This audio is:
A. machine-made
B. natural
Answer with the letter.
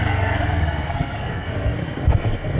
A